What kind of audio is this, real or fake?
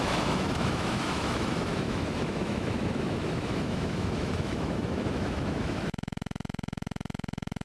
fake